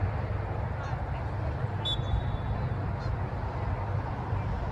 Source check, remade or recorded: recorded